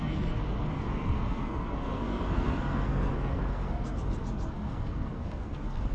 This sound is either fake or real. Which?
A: fake